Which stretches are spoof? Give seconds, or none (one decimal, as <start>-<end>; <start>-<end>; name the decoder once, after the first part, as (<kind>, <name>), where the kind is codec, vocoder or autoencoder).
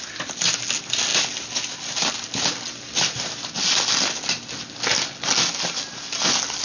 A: none